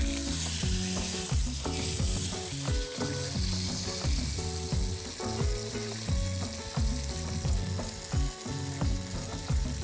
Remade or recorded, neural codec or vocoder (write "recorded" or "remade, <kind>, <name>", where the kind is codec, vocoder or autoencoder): recorded